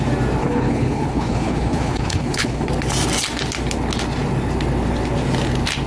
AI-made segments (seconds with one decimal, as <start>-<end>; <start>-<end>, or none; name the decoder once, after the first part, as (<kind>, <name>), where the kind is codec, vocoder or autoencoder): 0.4-2.7 (codec, HILCodec)

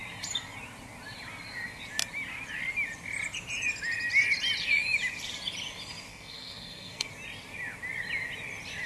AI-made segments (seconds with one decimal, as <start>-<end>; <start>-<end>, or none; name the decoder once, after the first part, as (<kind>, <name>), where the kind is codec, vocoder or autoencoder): 6.1-7.1 (codec, SNAC)

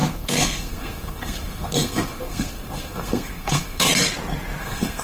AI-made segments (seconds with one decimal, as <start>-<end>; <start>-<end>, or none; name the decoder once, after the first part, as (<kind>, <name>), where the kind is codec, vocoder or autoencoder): 0.0-3.9 (codec, SNAC); 4.6-5.0

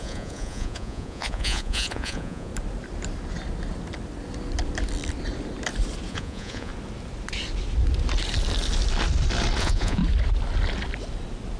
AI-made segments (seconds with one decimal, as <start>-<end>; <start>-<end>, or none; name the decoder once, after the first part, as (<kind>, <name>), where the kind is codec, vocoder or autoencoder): 0.0-2.5 (vocoder, Vocos); 6.1-6.7; 9.6-10.0

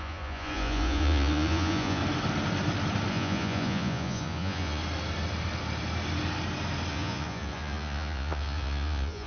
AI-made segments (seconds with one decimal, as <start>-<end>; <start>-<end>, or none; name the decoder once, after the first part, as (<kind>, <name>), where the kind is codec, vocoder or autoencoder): 0.0-2.0 (vocoder, Vocos); 3.1-4.8; 6.9-9.3

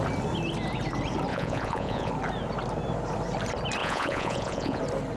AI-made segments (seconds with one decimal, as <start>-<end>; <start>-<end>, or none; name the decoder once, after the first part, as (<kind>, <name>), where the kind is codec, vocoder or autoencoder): 1.3-2.1 (vocoder, Vocos); 3.8-4.8